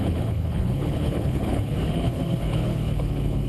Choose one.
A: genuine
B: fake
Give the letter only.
B